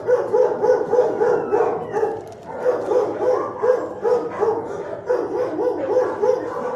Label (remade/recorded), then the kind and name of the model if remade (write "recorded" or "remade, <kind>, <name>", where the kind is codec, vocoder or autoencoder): recorded